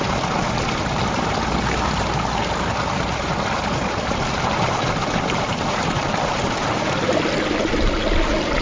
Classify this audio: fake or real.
real